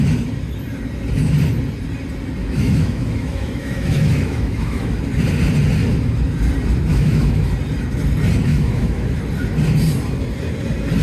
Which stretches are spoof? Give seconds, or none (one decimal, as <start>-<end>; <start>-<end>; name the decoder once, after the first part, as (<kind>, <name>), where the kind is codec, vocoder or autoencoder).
2.4-5.0 (autoencoder, DAC-VAE); 6.9-7.5; 8.5-9.2